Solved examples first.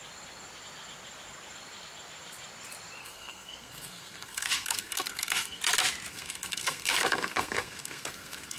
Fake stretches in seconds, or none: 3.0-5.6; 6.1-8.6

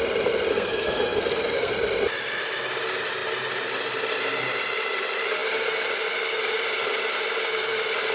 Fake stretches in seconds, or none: 0.5-1.7

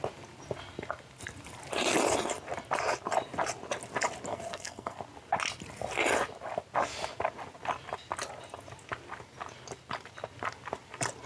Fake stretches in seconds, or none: 4.3-5.0

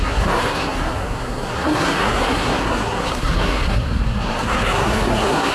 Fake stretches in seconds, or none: 0.0-5.5

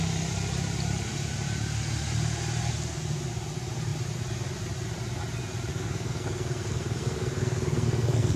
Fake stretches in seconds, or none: 5.7-8.4